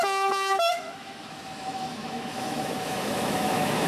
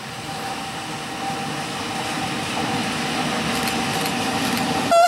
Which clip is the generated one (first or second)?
first